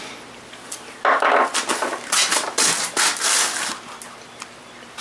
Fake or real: real